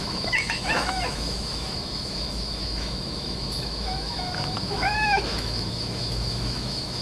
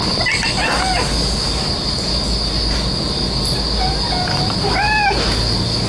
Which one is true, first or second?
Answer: second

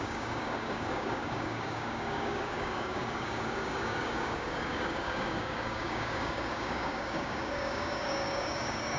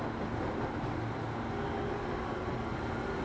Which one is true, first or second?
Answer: second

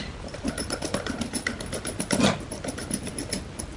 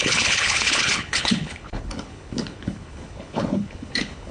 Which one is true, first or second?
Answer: first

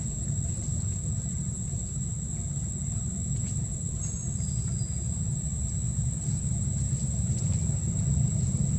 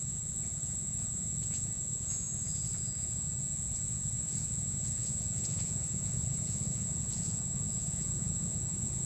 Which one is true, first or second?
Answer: first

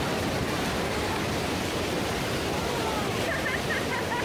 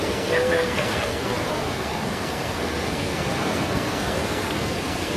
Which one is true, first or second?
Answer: first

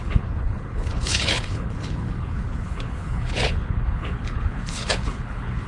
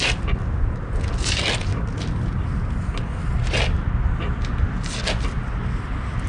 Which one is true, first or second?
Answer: second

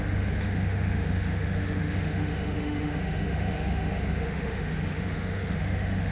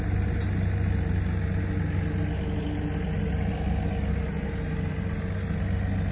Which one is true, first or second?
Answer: second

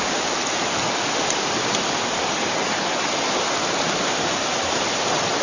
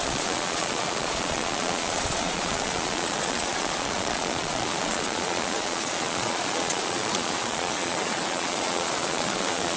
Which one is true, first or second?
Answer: first